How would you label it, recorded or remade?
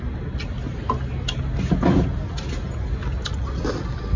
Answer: recorded